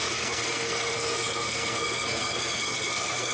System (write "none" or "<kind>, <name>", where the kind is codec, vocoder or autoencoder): codec, SNAC